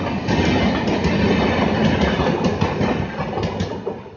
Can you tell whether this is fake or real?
real